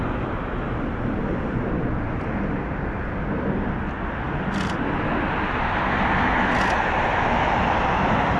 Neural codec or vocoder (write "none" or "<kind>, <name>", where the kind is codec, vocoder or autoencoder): none